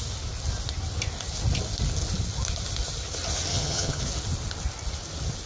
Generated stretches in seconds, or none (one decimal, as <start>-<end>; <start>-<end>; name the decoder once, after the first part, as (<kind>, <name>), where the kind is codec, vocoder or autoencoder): 3.5-4.0 (vocoder, HiFi-GAN)